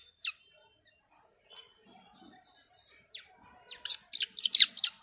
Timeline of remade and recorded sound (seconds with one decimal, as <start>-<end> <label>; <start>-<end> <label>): 0.0-1.0 recorded; 1.0-1.8 remade; 1.8-5.0 recorded